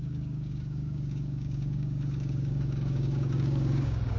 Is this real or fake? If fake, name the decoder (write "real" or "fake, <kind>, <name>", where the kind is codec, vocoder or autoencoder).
fake, codec, DAC